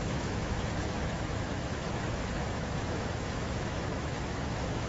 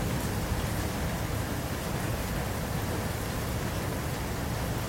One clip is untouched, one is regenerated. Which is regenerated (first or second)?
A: first